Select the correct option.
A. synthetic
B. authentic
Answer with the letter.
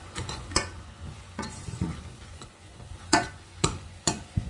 A